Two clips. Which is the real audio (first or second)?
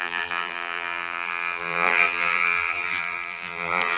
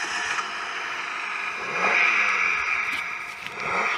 second